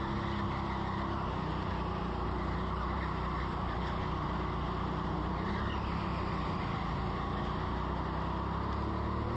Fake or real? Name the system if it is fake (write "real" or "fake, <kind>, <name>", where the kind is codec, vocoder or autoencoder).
real